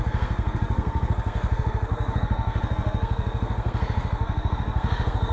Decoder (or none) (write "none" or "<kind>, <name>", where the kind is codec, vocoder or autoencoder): codec, SNAC